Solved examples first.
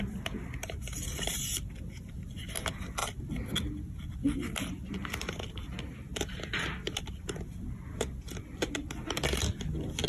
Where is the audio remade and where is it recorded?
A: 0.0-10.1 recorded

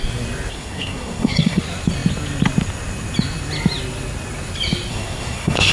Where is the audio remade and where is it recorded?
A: 0.0-0.5 recorded; 0.5-1.6 remade; 1.6-4.9 recorded; 4.9-5.7 remade

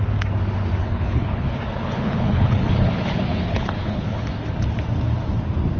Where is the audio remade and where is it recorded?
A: 0.0-0.8 recorded; 0.8-4.3 remade; 4.3-5.8 recorded